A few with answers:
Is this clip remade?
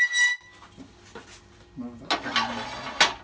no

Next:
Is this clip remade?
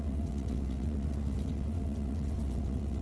yes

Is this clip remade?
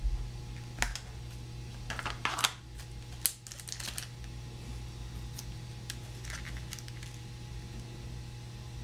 no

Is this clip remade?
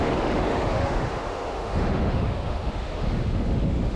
yes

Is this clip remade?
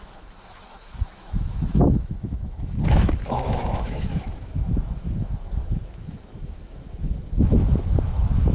yes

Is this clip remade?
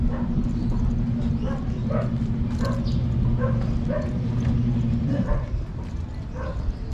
no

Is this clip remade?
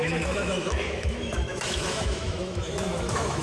yes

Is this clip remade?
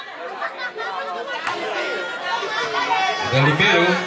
no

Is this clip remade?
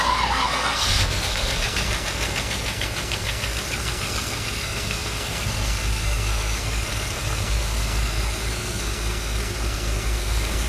yes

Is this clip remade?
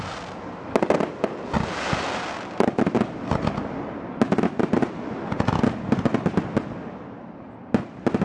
no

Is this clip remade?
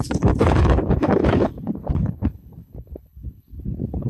yes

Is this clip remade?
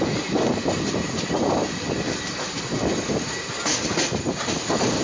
no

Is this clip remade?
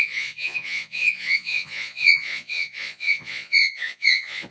yes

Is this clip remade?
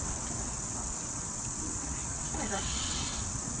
yes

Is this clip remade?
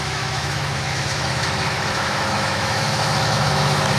yes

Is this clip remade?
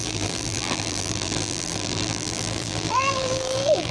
yes